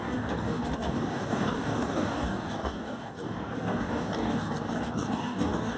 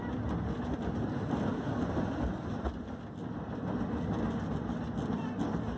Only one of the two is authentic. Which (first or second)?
second